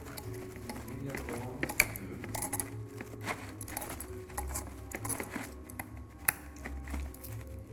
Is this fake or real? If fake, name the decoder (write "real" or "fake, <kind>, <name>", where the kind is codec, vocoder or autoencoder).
real